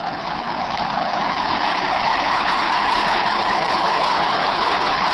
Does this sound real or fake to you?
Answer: fake